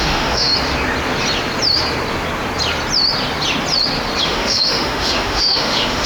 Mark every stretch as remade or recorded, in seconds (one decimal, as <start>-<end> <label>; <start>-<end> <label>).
0.0-0.5 remade; 0.5-4.2 recorded; 4.2-6.1 remade

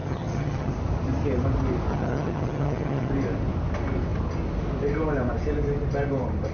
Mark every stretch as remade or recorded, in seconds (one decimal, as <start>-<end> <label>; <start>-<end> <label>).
0.0-0.7 remade; 0.7-1.9 recorded; 1.9-3.1 remade; 3.1-6.5 recorded

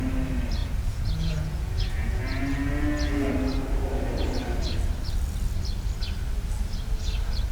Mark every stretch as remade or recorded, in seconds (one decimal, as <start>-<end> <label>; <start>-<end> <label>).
0.0-0.6 recorded; 0.6-2.4 remade; 2.4-7.5 recorded

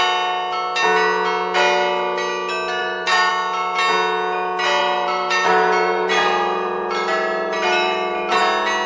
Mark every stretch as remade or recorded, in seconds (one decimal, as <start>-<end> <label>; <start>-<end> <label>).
0.0-2.8 recorded; 2.8-3.3 remade; 3.3-4.8 recorded; 4.8-8.4 remade; 8.4-8.9 recorded

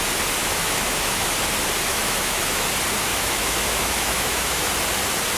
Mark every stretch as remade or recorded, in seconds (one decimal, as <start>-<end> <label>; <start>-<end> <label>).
0.0-0.4 recorded; 0.4-1.3 remade; 1.3-1.9 recorded; 1.9-2.7 remade; 2.7-3.1 recorded; 3.1-4.7 remade; 4.7-5.4 recorded